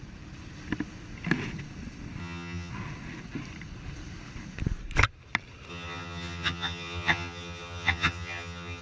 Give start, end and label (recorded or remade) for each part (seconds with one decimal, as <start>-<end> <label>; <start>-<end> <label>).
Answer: 0.0-2.2 recorded; 2.2-2.7 remade; 2.7-5.7 recorded; 5.7-8.8 remade